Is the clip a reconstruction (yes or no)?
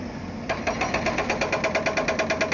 no